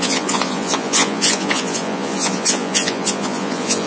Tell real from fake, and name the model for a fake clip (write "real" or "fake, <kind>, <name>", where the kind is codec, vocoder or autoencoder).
fake, vocoder, Vocos